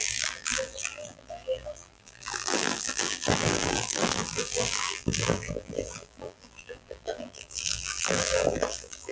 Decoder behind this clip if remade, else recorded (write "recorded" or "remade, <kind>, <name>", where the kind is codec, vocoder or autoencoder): remade, vocoder, BigVGAN v2